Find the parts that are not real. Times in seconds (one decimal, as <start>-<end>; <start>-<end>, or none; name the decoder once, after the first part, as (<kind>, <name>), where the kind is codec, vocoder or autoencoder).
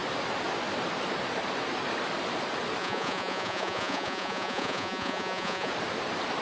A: 2.8-5.7 (vocoder, Vocos)